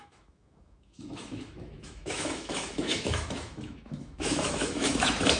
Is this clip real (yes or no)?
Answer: no